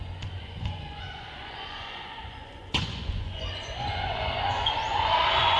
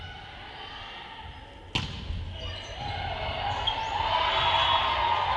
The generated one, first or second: first